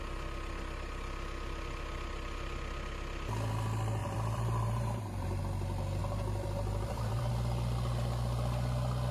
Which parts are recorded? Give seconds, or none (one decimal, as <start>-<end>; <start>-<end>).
0.0-4.0; 5.4-6.0; 7.3-9.1